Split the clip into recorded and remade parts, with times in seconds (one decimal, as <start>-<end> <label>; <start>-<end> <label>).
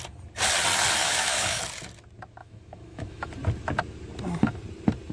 0.0-1.0 recorded; 1.0-1.6 remade; 1.6-2.4 recorded; 2.4-3.3 remade; 3.3-5.1 recorded